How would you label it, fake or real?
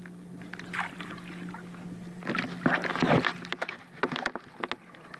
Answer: real